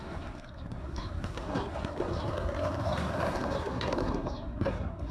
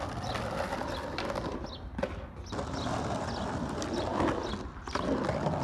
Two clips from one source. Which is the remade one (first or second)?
first